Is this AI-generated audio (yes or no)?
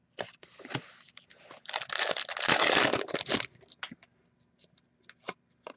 no